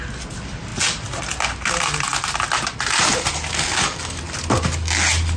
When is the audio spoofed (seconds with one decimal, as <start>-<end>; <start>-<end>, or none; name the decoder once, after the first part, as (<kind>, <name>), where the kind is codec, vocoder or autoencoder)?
3.5-4.2 (codec, DAC)

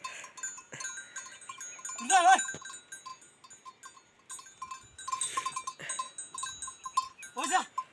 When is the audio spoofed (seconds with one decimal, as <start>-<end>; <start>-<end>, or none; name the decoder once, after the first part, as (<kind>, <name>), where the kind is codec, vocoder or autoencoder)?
none

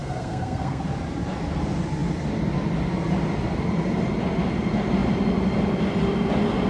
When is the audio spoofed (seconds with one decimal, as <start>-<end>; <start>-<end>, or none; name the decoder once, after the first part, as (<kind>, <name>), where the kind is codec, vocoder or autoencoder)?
0.0-0.8 (codec, SNAC)

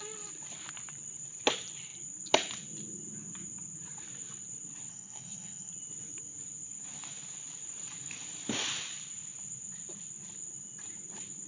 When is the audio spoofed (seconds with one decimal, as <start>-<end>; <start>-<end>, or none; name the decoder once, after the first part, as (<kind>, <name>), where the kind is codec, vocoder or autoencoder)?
4.9-5.7 (codec, SNAC)

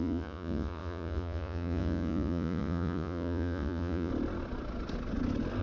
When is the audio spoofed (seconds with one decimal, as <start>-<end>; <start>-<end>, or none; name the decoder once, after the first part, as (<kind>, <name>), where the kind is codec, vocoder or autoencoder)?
0.0-4.1 (vocoder, Vocos)

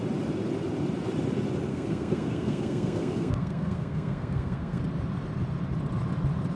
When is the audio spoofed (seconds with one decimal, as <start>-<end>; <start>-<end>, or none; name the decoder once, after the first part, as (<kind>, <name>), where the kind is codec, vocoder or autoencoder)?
1.7-4.8 (codec, SNAC)